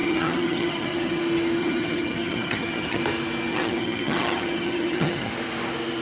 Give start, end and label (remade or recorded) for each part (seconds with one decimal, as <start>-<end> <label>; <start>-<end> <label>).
0.0-1.2 remade; 1.2-1.6 recorded; 1.6-3.0 remade; 3.0-3.5 recorded; 3.5-5.3 remade; 5.3-6.0 recorded